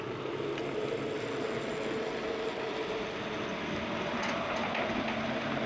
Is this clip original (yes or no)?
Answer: yes